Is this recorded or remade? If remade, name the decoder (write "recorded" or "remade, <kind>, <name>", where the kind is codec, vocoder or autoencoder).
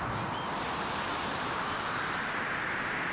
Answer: recorded